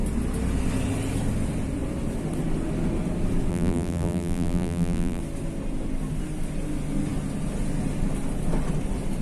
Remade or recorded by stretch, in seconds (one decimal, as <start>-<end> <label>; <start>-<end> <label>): 0.0-3.5 recorded; 3.5-5.2 remade; 5.2-9.2 recorded